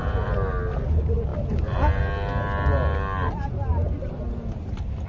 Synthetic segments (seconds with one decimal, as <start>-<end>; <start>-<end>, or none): none